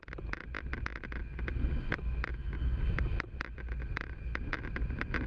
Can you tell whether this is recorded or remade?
recorded